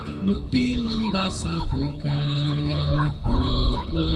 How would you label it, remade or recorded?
remade